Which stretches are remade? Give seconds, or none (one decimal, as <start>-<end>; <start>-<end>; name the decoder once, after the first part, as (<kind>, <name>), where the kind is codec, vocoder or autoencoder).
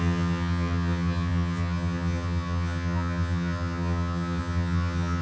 0.0-5.2 (vocoder, HiFi-GAN)